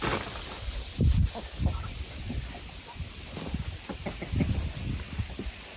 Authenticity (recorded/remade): recorded